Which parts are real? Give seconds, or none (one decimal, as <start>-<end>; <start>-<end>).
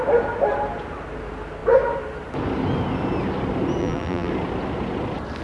0.0-3.8; 4.3-5.4